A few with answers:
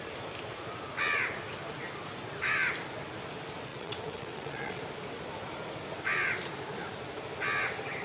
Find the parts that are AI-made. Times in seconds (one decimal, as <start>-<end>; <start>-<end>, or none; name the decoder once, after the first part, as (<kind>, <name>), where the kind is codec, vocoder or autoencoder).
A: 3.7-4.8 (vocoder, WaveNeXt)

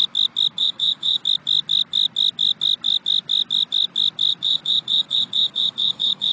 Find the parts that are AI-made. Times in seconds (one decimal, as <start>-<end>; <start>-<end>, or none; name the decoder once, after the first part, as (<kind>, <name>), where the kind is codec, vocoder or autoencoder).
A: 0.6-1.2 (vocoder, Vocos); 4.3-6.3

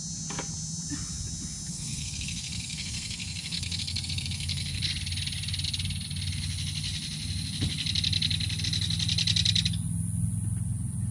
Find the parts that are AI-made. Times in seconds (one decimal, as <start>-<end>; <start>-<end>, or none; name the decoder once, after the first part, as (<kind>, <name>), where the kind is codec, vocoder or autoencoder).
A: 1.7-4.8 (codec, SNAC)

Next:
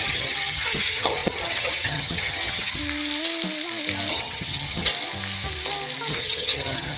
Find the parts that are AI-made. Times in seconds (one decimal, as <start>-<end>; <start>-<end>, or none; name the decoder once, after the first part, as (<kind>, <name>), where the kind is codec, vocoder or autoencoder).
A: 0.0-2.8 (vocoder, HiFi-GAN); 4.1-4.9; 6.1-7.0

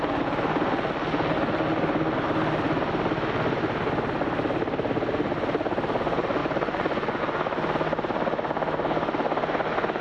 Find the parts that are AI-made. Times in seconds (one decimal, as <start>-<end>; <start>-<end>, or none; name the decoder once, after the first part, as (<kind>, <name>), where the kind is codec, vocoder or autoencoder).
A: 6.4-7.2 (vocoder, Vocos)

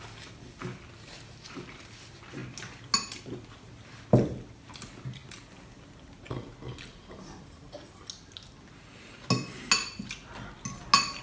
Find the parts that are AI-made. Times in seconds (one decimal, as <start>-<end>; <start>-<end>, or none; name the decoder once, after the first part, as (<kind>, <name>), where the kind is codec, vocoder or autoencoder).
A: none

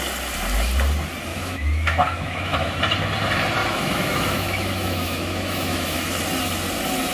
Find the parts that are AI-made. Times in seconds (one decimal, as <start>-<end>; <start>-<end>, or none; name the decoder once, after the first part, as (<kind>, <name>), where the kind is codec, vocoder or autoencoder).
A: 1.3-2.8 (autoencoder, DAC-VAE); 3.6-6.2

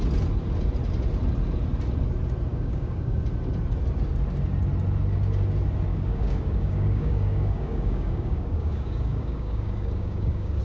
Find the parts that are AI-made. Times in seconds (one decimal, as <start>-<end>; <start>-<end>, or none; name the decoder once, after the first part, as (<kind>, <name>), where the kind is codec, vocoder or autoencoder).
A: 2.5-3.2 (codec, DAC); 5.9-10.6